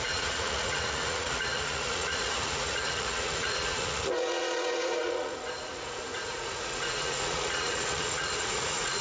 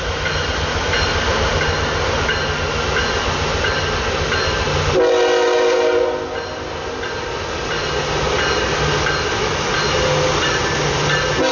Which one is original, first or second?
second